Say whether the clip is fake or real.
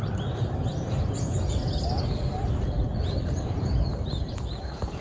real